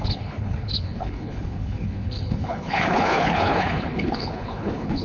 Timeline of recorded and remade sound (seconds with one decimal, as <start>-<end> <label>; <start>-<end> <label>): 0.0-5.0 remade